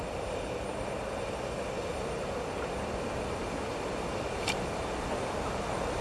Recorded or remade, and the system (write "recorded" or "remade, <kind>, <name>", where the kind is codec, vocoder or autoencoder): recorded